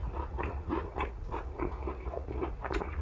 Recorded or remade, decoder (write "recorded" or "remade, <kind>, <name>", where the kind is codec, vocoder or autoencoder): remade, vocoder, Vocos